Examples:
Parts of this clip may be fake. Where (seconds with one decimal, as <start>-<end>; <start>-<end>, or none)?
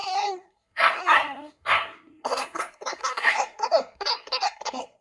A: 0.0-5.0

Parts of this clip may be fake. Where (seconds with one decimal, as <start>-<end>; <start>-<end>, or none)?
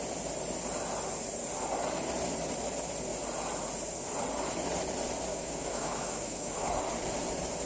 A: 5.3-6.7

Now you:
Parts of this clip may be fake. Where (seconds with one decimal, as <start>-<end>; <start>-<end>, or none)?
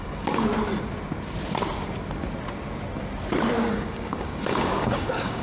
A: 0.0-0.5; 3.7-5.4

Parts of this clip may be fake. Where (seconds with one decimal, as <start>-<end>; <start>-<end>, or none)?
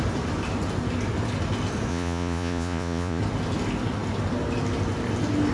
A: 1.9-3.2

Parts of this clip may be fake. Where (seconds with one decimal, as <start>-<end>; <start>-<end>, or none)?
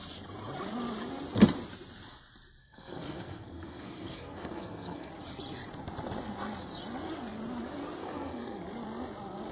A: 2.6-5.1; 8.0-8.6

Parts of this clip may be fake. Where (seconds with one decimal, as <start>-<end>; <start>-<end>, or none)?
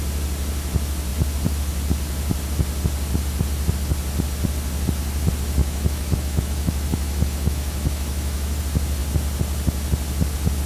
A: 5.6-8.6